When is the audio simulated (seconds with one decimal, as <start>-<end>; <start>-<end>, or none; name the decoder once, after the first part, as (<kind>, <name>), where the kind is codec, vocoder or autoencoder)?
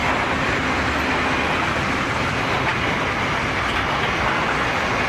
none